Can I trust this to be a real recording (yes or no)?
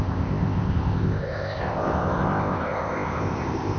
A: no